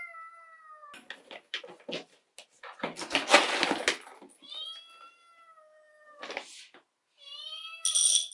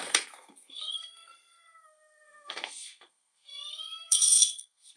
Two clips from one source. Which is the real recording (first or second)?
first